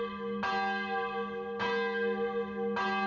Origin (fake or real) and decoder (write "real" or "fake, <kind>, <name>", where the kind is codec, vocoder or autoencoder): real